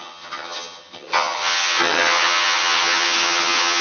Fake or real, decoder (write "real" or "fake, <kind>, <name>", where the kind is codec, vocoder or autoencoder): fake, vocoder, HiFi-GAN